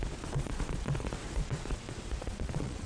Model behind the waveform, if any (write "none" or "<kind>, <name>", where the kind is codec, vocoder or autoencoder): vocoder, Vocos